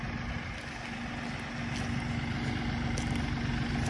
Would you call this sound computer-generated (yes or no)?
no